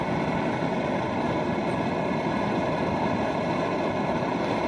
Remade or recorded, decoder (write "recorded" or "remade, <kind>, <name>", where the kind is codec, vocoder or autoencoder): recorded